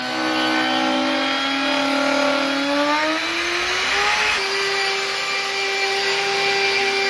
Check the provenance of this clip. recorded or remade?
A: recorded